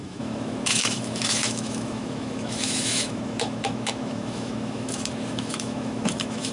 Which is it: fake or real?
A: fake